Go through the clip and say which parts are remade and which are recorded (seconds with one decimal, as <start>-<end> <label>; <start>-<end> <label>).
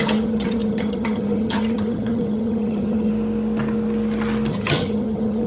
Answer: 0.0-3.1 remade; 3.1-4.5 recorded; 4.5-5.5 remade